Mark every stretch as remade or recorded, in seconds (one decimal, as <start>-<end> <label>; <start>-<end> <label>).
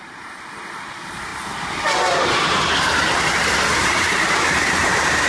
0.0-1.3 remade; 1.3-4.0 recorded; 4.0-5.3 remade